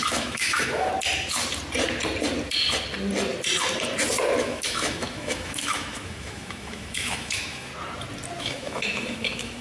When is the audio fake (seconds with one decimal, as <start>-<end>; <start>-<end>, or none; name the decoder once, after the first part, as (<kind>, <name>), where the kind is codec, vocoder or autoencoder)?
0.0-0.9 (autoencoder, DAC-VAE); 4.4-7.7; 8.4-9.6